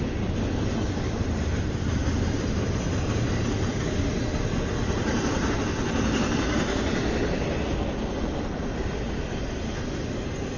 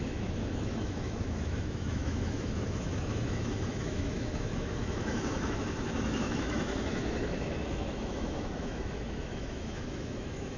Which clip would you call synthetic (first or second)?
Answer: second